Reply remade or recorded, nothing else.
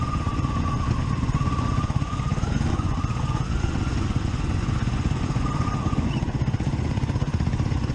remade